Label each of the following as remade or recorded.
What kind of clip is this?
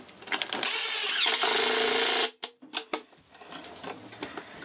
recorded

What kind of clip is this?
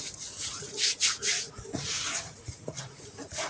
remade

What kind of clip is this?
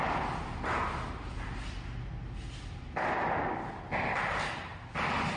recorded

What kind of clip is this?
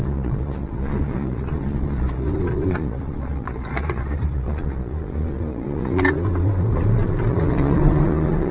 remade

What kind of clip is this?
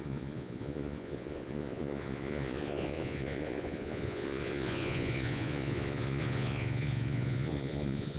remade